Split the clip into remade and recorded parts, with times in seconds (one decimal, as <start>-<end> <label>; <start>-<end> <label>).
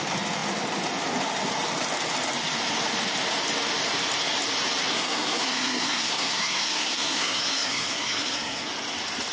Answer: 0.0-4.9 recorded; 4.9-8.7 remade; 8.7-9.3 recorded